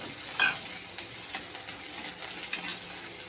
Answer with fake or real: real